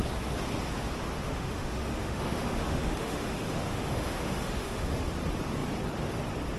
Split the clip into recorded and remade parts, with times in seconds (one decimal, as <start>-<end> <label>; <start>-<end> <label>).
0.0-1.1 recorded; 1.1-5.1 remade; 5.1-6.6 recorded